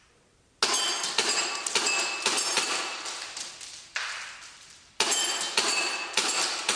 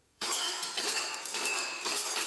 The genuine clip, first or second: first